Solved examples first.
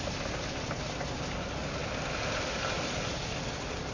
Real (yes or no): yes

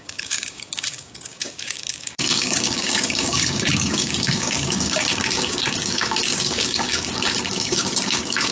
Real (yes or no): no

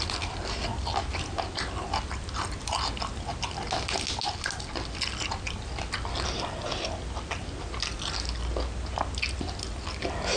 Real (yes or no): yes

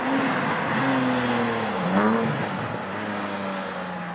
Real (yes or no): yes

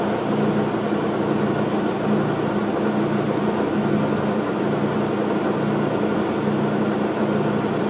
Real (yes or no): yes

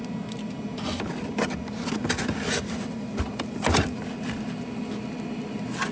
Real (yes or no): yes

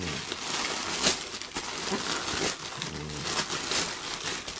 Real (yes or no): yes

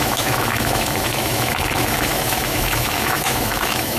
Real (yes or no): no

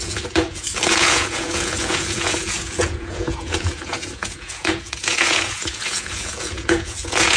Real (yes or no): no